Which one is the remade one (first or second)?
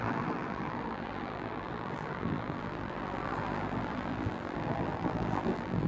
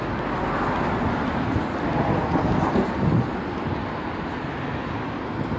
first